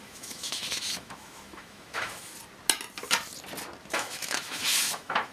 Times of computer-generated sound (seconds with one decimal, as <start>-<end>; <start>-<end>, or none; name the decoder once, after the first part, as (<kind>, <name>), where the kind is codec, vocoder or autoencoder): 0.0-2.3 (autoencoder, DAC-VAE); 3.9-5.3